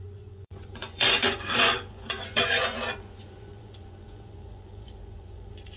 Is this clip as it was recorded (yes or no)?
no